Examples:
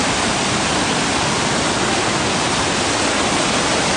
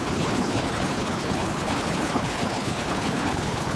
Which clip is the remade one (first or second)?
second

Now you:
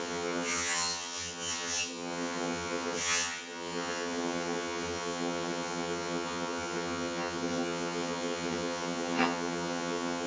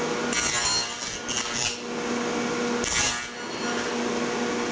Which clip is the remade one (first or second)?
first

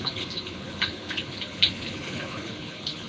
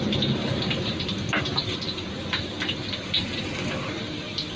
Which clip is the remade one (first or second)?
first